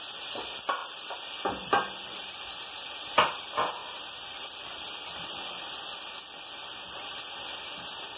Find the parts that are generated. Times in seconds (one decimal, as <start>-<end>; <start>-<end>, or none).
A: none